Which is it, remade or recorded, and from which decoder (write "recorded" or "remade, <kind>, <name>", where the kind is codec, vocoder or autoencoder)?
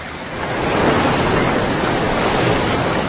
remade, codec, DAC